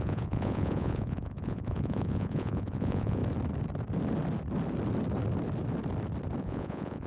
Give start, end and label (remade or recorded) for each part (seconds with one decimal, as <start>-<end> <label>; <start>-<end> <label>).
0.0-3.2 remade; 3.2-6.4 recorded; 6.4-7.1 remade